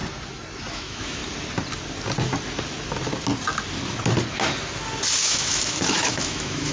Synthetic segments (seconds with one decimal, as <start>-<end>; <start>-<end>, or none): 0.7-1.2; 5.2-6.7